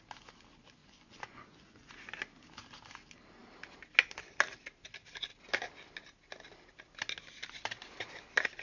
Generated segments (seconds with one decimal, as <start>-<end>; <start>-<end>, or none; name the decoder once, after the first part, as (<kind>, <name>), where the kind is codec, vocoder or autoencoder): 0.8-1.9 (vocoder, Vocos)